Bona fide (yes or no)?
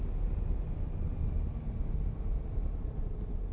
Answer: yes